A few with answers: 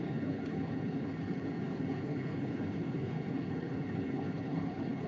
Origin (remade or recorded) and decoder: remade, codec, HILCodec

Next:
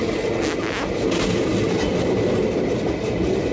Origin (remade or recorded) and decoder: recorded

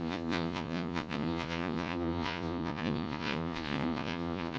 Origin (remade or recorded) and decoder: remade, vocoder, Vocos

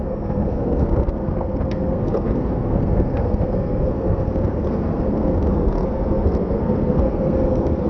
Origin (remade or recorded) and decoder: remade, codec, SNAC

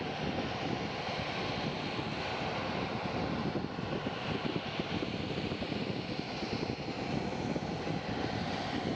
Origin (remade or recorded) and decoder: recorded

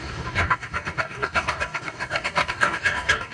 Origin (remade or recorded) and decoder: remade, codec, DAC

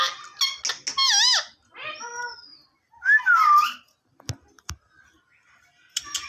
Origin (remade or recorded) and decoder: recorded